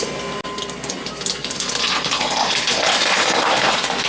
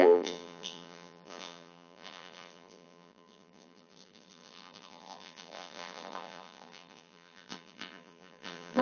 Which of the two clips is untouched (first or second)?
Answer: first